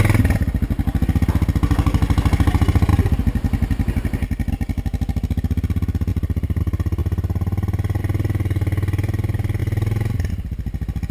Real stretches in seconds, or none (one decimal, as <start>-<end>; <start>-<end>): 0.0-6.1; 6.6-11.1